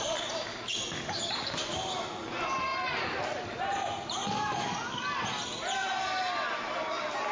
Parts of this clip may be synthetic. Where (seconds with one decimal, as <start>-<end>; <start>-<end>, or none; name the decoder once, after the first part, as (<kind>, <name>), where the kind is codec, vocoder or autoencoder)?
none